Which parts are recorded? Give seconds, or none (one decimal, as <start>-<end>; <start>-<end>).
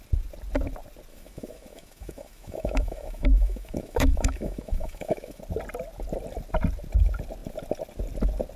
0.0-1.1; 5.4-8.6